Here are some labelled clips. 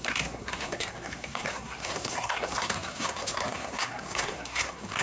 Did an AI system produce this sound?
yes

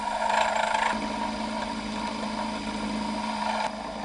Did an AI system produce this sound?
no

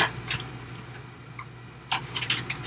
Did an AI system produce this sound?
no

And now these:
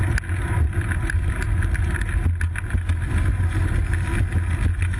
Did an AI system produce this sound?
no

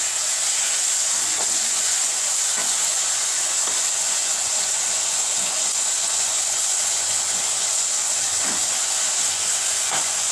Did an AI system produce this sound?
yes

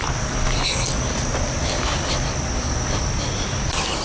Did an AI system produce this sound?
no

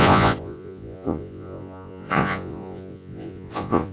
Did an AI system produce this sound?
yes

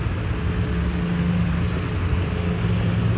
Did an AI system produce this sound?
no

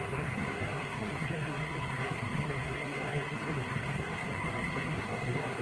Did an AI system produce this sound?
yes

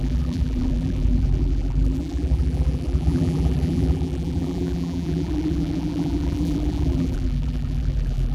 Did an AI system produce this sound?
yes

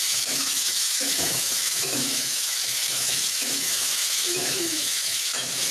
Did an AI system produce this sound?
yes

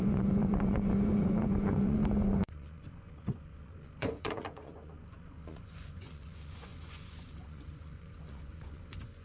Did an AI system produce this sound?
yes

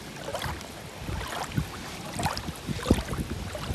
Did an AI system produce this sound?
no